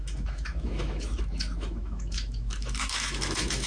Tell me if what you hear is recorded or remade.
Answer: remade